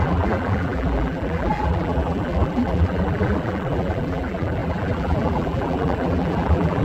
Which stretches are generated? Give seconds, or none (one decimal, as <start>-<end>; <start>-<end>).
0.0-6.8